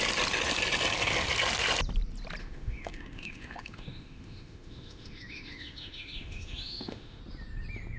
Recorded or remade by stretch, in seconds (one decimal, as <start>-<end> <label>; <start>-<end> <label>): 0.0-2.4 recorded; 2.4-7.2 remade; 7.2-8.0 recorded